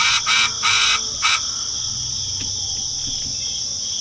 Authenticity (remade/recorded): recorded